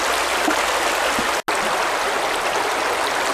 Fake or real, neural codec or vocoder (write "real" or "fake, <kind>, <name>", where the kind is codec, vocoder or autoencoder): real